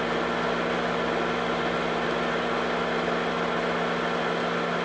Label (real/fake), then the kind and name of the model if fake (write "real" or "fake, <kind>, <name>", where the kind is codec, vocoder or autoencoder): real